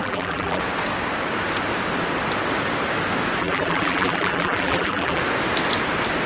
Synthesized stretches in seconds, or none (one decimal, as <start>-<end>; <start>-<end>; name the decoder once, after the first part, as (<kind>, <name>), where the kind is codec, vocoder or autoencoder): 0.0-0.6 (vocoder, BigVGAN v2); 3.4-5.2